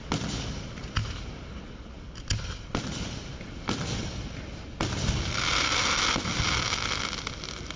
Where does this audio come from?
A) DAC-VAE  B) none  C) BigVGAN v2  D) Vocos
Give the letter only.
B